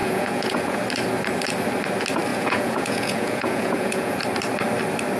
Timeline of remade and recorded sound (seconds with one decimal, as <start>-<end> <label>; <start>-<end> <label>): 0.0-0.8 remade; 0.8-2.3 recorded; 2.3-4.1 remade; 4.1-5.2 recorded